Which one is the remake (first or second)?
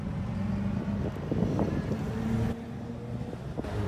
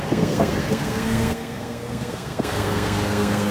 second